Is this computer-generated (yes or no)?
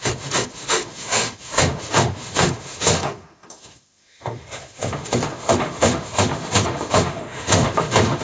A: yes